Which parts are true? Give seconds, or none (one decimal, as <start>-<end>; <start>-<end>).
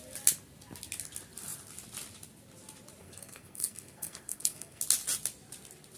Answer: 0.0-3.0; 4.8-6.0